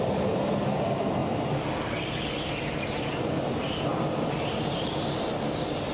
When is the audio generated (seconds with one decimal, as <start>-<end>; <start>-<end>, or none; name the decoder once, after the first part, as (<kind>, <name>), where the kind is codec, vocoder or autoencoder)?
none